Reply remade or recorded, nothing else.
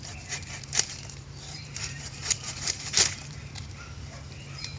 remade